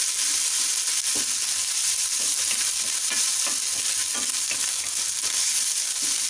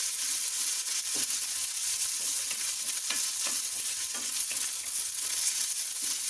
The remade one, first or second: second